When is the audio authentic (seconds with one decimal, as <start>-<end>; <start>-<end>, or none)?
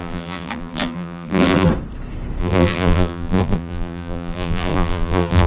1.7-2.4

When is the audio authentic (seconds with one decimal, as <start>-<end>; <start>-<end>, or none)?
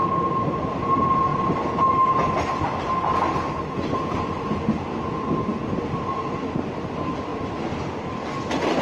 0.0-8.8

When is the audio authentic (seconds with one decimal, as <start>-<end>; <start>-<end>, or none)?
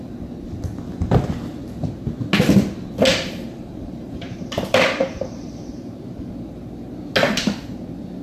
0.0-3.1; 6.3-8.2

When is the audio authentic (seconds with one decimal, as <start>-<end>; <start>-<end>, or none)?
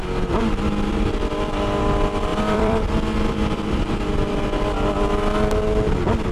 0.0-2.3; 2.9-6.3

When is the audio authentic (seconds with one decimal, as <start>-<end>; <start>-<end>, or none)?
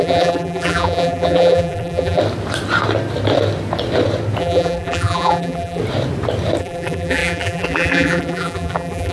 2.2-4.4; 5.8-6.6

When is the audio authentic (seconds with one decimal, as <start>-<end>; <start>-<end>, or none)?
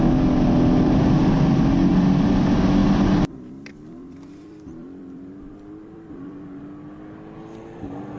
0.0-2.8; 6.6-8.2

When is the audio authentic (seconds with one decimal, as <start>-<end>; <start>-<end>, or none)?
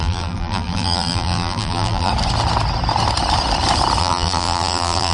2.1-4.0